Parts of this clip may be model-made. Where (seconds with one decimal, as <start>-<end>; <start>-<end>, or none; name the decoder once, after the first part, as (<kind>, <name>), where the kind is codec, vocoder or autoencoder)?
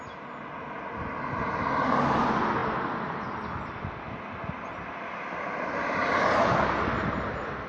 none